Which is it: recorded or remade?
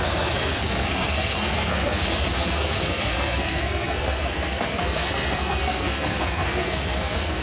remade